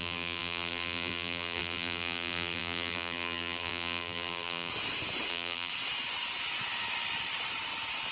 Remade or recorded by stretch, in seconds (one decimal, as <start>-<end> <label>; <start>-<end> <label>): 0.0-4.7 remade; 4.7-5.3 recorded; 5.3-5.7 remade; 5.7-8.1 recorded